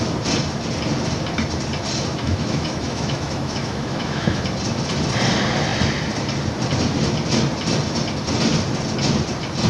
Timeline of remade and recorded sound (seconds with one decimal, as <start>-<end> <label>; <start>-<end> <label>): 0.0-2.1 recorded; 2.1-4.4 remade; 4.4-9.7 recorded